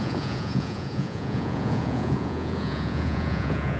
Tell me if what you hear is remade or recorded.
remade